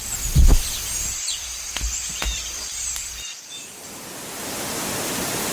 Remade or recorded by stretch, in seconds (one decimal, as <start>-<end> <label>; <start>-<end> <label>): 0.0-0.6 remade; 0.6-1.4 recorded; 1.4-4.4 remade; 4.4-5.5 recorded